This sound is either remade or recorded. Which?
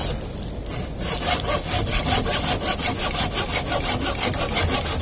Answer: recorded